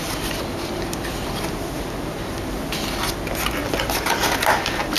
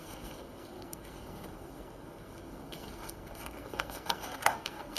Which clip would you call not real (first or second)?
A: second